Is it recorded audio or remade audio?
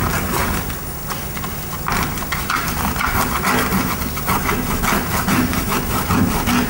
recorded